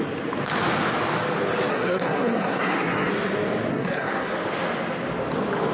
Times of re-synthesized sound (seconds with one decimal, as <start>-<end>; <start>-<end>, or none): 1.7-3.1; 3.7-4.3